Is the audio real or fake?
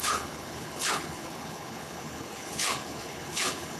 fake